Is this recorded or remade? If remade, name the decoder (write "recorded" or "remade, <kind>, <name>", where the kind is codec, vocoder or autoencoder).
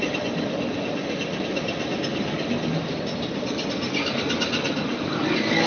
recorded